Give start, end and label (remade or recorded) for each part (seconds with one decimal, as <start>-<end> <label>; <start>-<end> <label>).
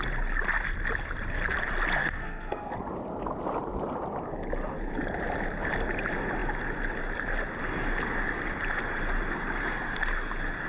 0.0-2.0 recorded; 2.0-2.7 remade; 2.7-10.7 recorded